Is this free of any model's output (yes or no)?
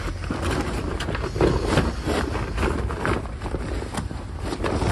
yes